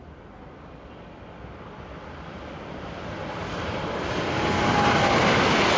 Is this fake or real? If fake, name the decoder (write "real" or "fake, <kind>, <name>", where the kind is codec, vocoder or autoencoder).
real